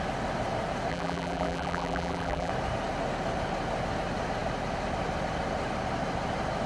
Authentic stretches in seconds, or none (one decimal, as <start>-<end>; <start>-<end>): 0.0-0.9; 2.5-6.7